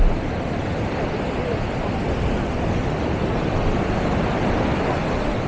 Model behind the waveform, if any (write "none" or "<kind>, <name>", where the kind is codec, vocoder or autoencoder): none